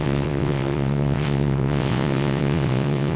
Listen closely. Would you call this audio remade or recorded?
remade